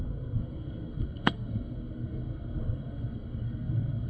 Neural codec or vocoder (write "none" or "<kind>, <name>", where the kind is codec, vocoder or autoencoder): codec, SNAC